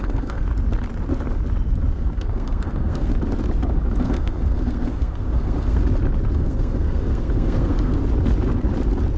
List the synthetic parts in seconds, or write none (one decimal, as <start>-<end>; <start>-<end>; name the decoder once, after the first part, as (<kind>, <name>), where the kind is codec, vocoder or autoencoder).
0.0-0.5 (codec, SNAC); 1.9-3.1; 4.0-5.8; 6.3-8.0